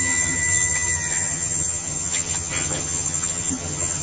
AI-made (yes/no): yes